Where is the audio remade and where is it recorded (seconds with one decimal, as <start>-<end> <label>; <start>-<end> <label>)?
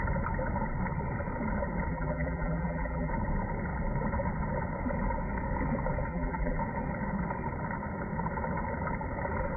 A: 0.0-1.9 recorded; 1.9-3.1 remade; 3.1-6.1 recorded; 6.1-6.6 remade; 6.6-9.6 recorded